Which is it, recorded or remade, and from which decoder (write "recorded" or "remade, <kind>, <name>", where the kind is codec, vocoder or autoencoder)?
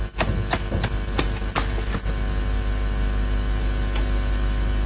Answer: recorded